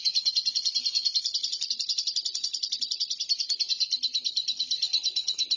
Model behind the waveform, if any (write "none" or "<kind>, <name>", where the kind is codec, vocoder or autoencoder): none